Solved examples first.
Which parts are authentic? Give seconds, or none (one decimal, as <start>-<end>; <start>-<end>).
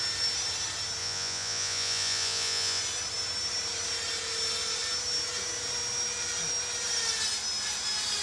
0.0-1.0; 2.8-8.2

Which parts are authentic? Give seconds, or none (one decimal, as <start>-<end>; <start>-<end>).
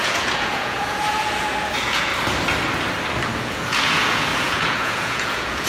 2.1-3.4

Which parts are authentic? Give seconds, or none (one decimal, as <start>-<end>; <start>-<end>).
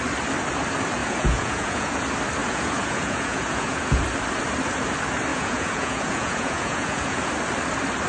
0.0-1.0; 2.0-2.4; 4.0-5.3; 7.3-8.1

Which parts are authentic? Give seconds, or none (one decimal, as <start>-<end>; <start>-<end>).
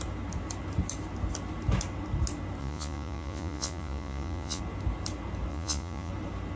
0.0-2.6; 4.6-5.5; 6.1-6.6